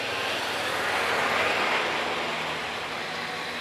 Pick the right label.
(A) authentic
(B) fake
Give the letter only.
A